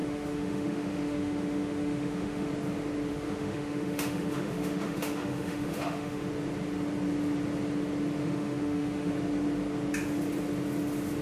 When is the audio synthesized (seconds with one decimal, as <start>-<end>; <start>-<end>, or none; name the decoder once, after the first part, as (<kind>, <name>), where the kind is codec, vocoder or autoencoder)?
0.0-2.5 (autoencoder, DAC-VAE); 3.1-6.3; 8.2-9.1